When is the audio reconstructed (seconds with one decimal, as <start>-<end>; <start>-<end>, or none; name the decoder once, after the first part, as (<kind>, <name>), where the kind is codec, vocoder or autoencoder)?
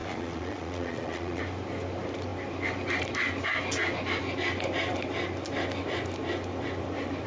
0.0-1.4 (vocoder, Vocos)